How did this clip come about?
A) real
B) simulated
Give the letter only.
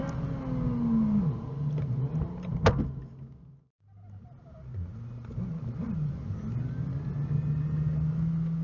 A